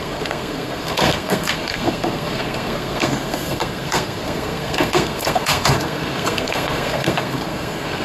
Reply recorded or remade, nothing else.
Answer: remade